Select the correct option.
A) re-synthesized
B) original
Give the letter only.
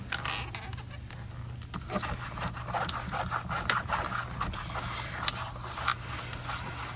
B